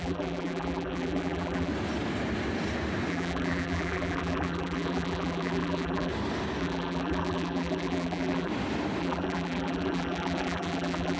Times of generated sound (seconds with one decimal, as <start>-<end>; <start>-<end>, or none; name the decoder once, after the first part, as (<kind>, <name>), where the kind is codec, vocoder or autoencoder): 0.0-1.7 (vocoder, BigVGAN v2); 3.1-6.1; 6.6-8.5; 9.0-11.2